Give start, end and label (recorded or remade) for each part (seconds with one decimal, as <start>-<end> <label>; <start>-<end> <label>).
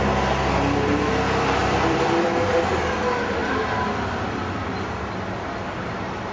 0.0-1.6 recorded; 1.6-2.7 remade; 2.7-6.3 recorded